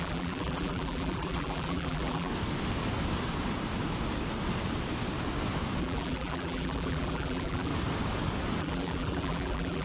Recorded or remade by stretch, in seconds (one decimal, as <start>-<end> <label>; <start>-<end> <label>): 0.0-2.3 remade; 2.3-5.8 recorded; 5.8-7.7 remade; 7.7-8.6 recorded; 8.6-9.8 remade